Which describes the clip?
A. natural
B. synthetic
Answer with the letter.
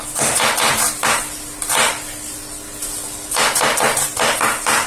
A